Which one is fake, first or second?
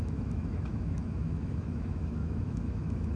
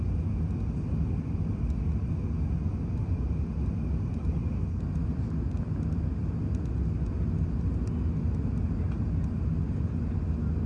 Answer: first